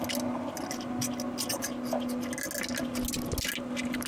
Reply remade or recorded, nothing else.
recorded